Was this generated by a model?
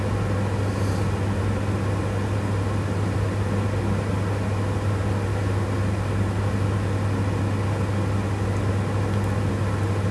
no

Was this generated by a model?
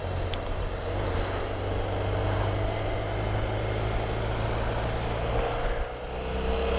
no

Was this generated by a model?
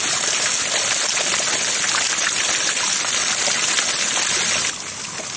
no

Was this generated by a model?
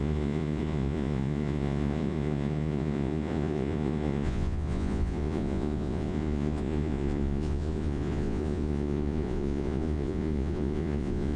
yes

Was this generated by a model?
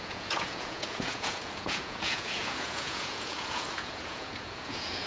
yes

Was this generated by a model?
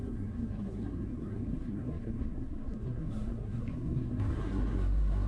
yes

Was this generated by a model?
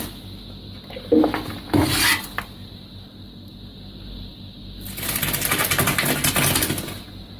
no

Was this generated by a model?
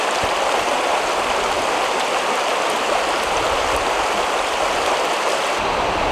no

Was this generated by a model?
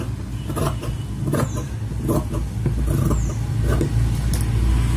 no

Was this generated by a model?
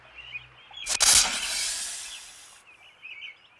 no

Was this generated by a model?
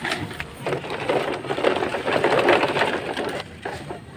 no